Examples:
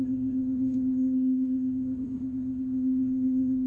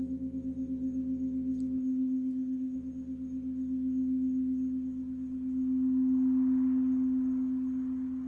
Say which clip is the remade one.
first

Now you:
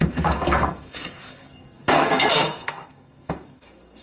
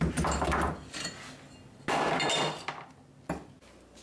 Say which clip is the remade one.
first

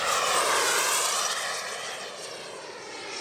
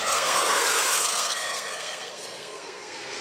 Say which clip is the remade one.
second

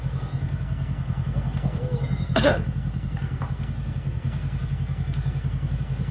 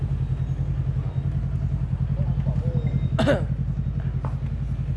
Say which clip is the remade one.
first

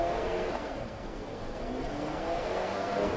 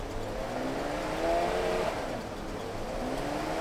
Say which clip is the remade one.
first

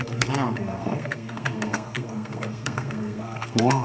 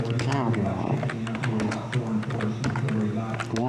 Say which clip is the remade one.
first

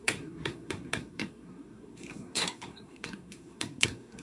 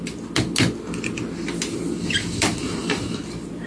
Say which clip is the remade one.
first